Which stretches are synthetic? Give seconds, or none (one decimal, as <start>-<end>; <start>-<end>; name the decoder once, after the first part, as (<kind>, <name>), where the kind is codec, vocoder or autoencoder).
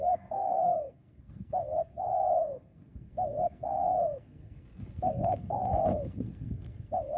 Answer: 0.0-7.2 (codec, SNAC)